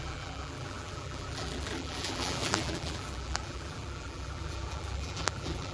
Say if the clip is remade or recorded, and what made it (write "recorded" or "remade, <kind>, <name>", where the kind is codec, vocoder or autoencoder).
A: remade, vocoder, BigVGAN v2